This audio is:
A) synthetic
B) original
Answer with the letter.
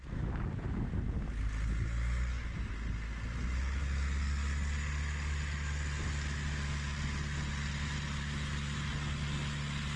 B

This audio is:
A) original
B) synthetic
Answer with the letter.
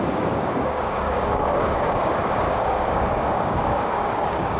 B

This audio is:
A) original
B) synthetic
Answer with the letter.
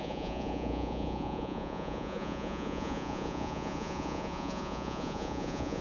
B